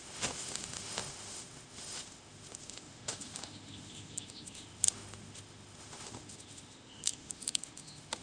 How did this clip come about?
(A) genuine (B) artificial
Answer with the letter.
B